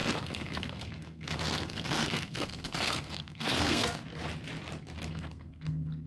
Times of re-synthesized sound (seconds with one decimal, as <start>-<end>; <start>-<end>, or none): 0.0-4.1; 5.1-6.1